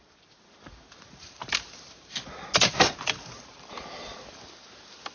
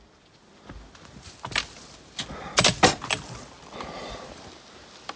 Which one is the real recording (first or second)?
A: second